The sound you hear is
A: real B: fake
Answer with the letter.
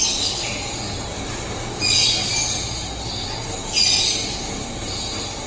A